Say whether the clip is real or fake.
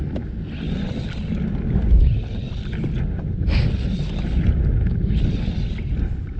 real